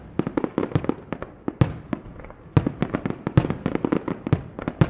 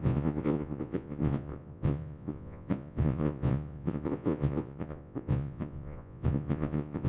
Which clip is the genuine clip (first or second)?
first